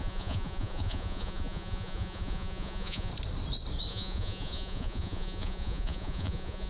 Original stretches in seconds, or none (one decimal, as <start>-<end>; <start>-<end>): 3.1-3.9